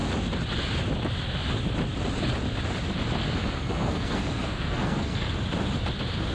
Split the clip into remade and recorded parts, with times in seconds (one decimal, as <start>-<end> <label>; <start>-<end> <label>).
0.0-3.4 recorded; 3.4-5.3 remade; 5.3-6.3 recorded